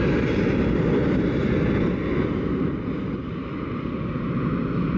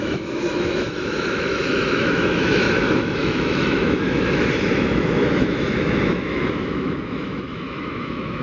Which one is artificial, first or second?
second